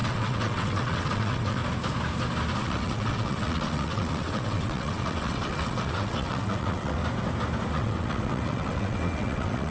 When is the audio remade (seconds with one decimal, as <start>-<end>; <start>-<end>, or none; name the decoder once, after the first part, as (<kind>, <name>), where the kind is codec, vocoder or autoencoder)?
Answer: 0.0-1.6 (vocoder, WaveNeXt); 2.6-7.0; 7.7-9.7

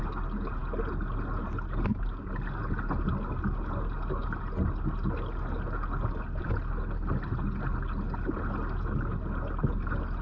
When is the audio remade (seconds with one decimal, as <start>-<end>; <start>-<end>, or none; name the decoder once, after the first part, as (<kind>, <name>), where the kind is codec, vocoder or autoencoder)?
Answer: none

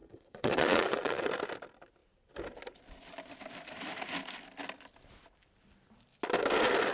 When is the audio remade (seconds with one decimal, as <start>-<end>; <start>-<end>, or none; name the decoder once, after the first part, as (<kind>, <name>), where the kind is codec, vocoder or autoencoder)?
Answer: 0.0-1.3 (vocoder, Vocos)

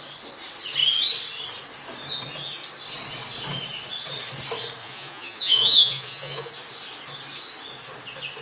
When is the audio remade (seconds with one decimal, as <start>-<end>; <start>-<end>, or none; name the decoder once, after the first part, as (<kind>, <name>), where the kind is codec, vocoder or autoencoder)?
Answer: 4.8-6.5 (vocoder, Vocos)

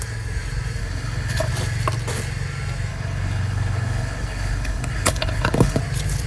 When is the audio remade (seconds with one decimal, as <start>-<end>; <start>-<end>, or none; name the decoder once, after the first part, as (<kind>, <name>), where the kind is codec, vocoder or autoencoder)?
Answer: 0.8-1.5 (codec, HILCodec); 2.9-5.8